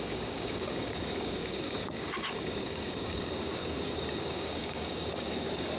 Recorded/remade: remade